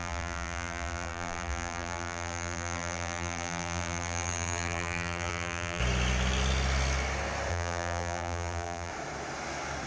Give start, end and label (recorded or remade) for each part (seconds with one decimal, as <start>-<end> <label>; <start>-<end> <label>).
0.0-5.8 remade; 5.8-7.5 recorded; 7.5-8.9 remade; 8.9-9.9 recorded